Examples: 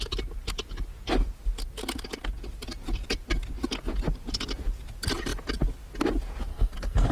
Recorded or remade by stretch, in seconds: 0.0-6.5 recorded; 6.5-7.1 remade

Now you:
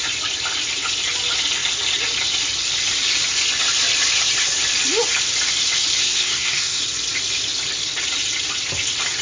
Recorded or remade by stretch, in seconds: 0.0-6.0 recorded; 6.0-6.8 remade; 6.8-9.2 recorded

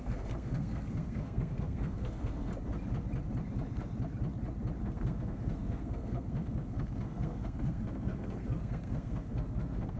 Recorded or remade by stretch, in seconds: 0.0-2.5 remade; 2.5-4.8 recorded; 4.8-10.0 remade

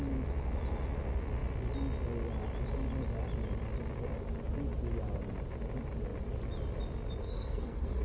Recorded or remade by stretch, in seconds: 0.0-7.2 recorded; 7.2-8.0 remade

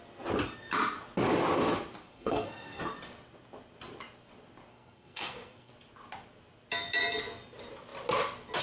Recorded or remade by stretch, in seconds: 0.0-2.0 recorded; 2.0-2.8 remade; 2.8-4.7 recorded; 4.7-5.7 remade; 5.7-8.6 recorded

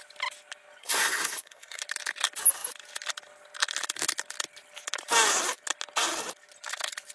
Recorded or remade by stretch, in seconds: 0.0-0.8 recorded; 0.8-1.8 remade; 1.8-7.1 recorded

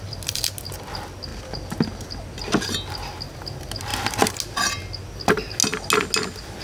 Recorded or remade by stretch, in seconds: 0.0-6.6 recorded

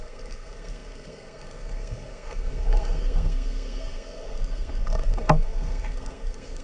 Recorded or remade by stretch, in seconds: 0.0-6.6 remade